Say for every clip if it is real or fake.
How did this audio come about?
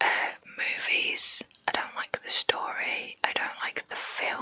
fake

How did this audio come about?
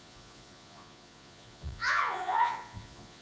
fake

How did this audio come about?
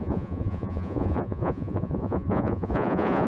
fake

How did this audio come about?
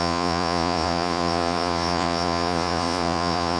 fake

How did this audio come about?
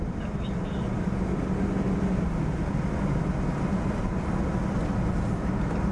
real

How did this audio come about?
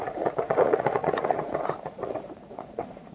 fake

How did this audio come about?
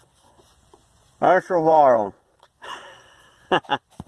fake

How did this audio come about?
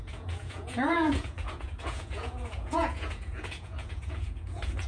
fake